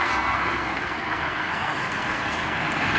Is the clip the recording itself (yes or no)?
no